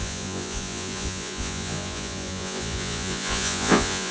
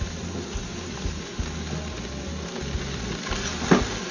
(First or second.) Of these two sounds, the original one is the second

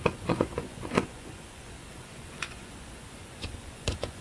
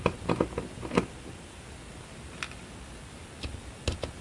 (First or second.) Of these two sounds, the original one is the second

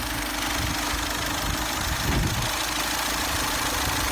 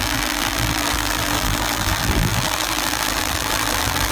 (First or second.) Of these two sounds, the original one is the first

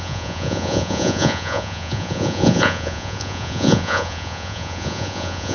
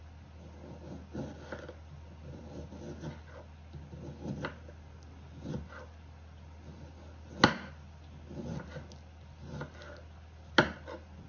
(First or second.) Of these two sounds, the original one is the second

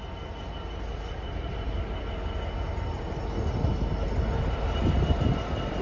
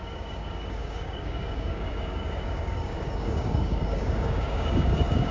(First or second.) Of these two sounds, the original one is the first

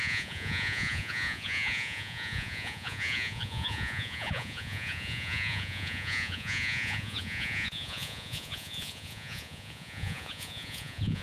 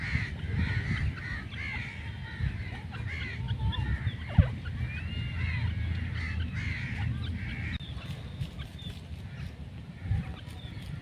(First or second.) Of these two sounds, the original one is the second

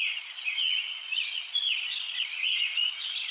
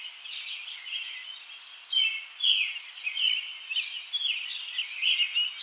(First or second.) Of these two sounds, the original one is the second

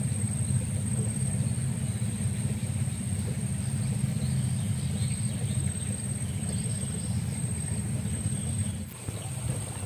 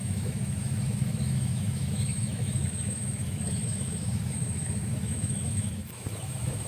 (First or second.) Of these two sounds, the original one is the first